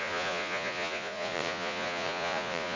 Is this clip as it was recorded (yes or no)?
no